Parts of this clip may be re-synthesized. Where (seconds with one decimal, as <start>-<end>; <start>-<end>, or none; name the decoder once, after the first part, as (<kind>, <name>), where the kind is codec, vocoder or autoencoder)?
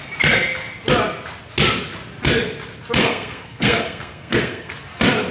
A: 3.0-4.7 (codec, SNAC)